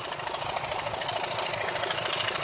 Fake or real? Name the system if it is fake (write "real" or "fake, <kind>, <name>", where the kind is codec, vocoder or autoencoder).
fake, vocoder, BigVGAN v2